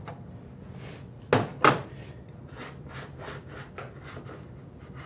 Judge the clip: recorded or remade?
recorded